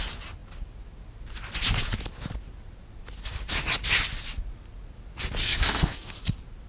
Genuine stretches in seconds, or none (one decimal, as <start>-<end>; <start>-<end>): 0.0-5.4; 6.1-6.7